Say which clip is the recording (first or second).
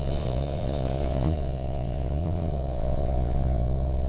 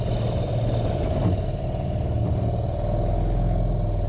second